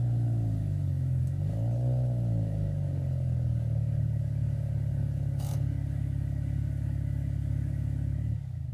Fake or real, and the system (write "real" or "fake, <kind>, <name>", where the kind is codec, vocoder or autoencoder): fake, codec, DAC